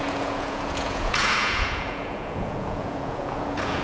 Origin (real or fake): fake